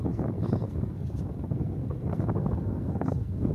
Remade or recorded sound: remade